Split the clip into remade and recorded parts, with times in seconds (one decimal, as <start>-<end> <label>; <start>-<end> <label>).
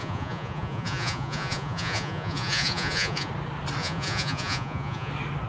0.0-3.3 remade; 3.3-3.8 recorded; 3.8-5.1 remade; 5.1-5.5 recorded